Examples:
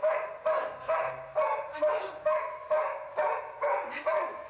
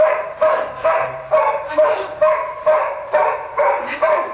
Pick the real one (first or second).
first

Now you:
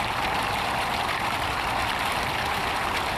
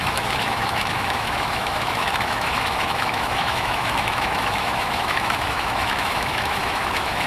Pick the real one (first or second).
first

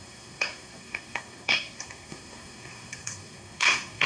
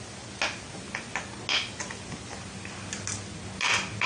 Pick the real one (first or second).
second